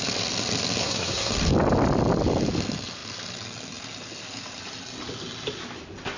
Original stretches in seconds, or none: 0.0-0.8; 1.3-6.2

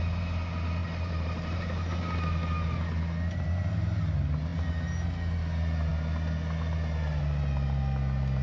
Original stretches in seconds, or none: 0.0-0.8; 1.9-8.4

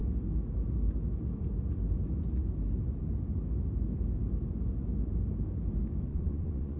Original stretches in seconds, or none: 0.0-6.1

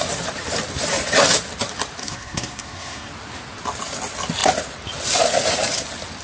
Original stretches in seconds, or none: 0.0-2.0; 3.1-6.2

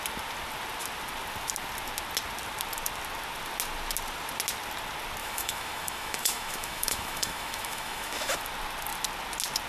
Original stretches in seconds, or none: 0.0-5.2; 8.4-9.7

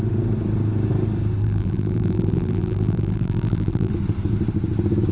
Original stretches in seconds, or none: 0.0-1.4; 3.9-5.1